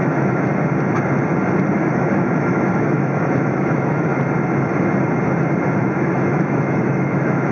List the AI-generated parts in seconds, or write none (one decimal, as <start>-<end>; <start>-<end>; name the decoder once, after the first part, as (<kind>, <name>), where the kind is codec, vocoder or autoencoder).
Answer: 0.0-0.5 (autoencoder, DAC-VAE); 1.7-4.1; 5.8-7.5